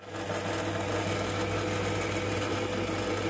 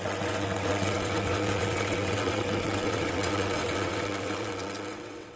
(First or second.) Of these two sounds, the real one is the first